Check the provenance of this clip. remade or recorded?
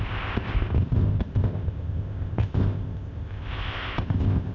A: remade